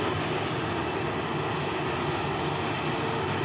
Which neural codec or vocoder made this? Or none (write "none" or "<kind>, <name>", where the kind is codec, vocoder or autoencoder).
none